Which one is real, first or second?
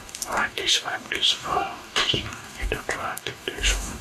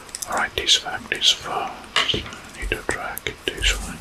second